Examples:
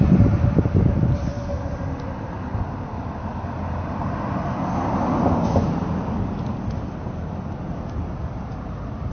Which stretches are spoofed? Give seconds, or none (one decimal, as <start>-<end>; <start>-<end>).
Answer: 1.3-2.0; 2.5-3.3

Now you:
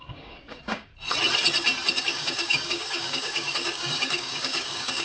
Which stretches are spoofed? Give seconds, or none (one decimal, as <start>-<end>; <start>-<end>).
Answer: 0.0-0.9; 2.0-5.0

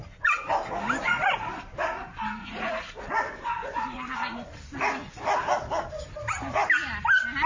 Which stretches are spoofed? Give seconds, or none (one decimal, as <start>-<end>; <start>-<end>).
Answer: 2.4-3.0